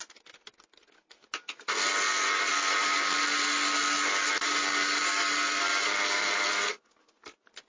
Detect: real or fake real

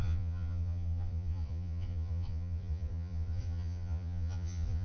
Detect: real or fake fake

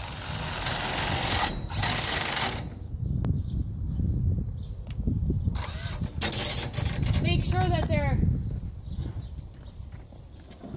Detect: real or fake real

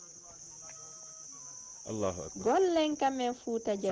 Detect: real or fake real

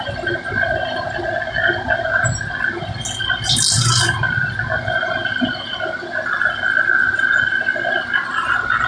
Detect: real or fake real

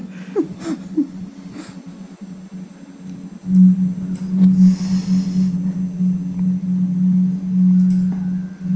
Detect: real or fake real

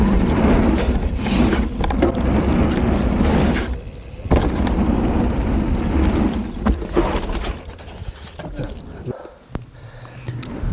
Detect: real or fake real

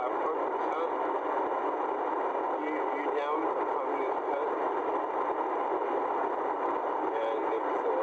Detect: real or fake real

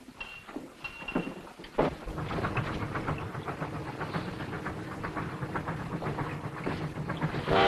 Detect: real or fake real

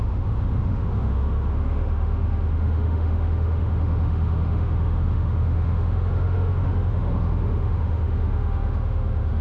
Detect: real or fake fake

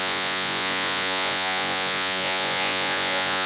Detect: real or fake fake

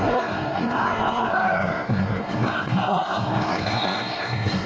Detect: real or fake fake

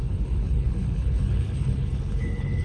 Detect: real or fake fake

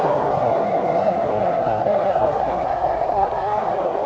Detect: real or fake fake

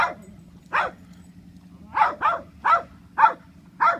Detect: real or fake real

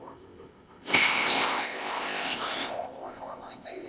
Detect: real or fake fake